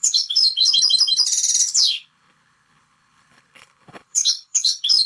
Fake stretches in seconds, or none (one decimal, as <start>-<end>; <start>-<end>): 0.0-0.8; 1.6-5.1